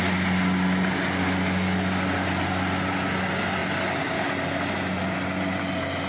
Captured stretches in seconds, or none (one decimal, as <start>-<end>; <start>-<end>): 0.0-6.1